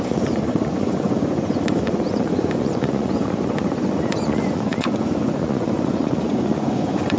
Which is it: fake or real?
fake